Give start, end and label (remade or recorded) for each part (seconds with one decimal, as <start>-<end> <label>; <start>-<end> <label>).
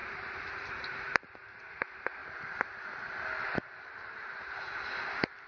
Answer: 0.0-2.2 remade; 2.2-3.4 recorded; 3.4-5.5 remade